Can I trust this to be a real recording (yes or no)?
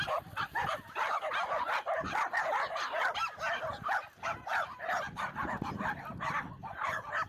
yes